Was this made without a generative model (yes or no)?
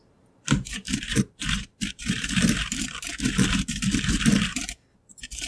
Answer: no